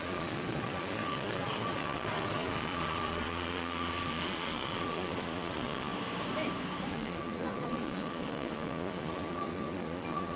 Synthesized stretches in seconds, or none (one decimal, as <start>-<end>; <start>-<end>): 0.0-5.9; 6.9-10.4